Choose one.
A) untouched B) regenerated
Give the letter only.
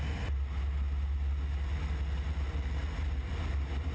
A